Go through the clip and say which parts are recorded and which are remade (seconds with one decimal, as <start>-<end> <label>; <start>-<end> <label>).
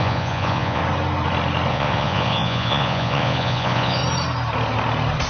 0.0-0.8 remade; 0.8-1.7 recorded; 1.7-4.0 remade; 4.0-5.3 recorded